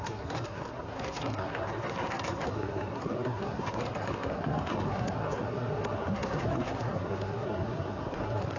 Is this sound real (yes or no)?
no